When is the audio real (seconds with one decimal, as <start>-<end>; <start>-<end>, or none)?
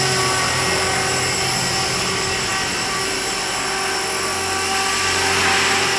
0.0-2.5; 3.2-6.0